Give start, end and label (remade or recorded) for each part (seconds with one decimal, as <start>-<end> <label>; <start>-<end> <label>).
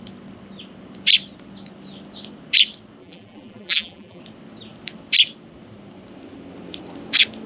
0.0-3.0 recorded; 3.0-4.2 remade; 4.2-7.5 recorded